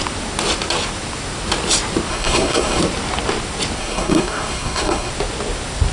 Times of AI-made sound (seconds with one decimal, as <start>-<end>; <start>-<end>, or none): 2.1-2.8; 3.8-5.1